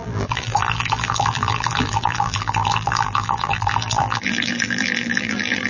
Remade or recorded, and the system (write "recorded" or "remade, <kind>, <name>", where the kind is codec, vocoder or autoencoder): remade, vocoder, BigVGAN v2